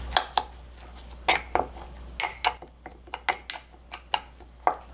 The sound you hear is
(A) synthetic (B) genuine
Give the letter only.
B